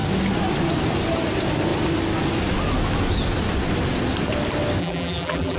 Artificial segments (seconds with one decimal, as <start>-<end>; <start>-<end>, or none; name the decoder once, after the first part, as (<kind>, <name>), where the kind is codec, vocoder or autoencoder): 4.8-5.6 (vocoder, BigVGAN v2)